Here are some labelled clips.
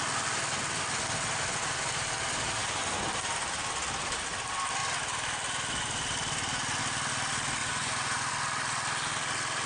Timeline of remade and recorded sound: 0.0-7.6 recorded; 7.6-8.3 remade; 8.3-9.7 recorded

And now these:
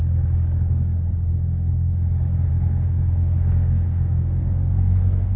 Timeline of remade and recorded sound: 0.0-1.3 recorded; 1.3-1.9 remade; 1.9-2.5 recorded; 2.5-5.4 remade

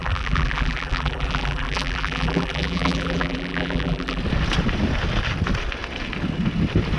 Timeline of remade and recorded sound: 0.0-4.2 remade; 4.2-7.0 recorded

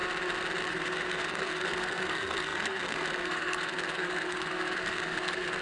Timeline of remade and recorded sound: 0.0-0.7 recorded; 0.7-5.6 remade

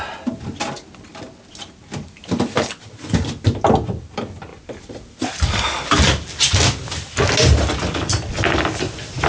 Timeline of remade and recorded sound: 0.0-4.5 recorded; 4.5-5.8 remade; 5.8-9.3 recorded

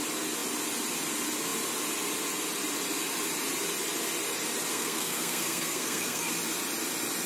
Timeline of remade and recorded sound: 0.0-4.7 recorded; 4.7-6.3 remade; 6.3-7.3 recorded

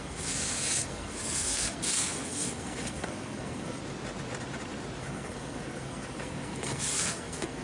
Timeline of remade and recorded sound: 0.0-3.8 remade; 3.8-5.0 recorded; 5.0-7.6 remade